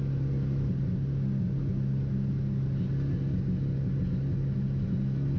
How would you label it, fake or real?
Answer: real